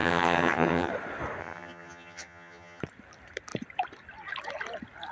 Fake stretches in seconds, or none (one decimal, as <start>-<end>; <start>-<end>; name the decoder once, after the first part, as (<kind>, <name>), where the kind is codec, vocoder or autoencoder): 0.0-0.9 (vocoder, HiFi-GAN); 1.4-2.8

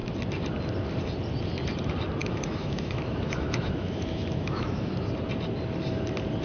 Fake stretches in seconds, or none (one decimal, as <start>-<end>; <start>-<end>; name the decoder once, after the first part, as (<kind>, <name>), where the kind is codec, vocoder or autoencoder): 2.2-4.9 (autoencoder, DAC-VAE)